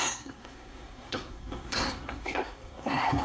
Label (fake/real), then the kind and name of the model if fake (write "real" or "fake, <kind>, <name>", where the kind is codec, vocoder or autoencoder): fake, codec, SNAC